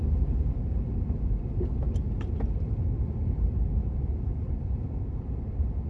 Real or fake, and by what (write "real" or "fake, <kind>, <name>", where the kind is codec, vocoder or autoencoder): fake, vocoder, BigVGAN v2